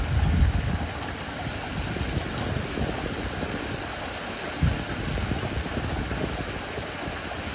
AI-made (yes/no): no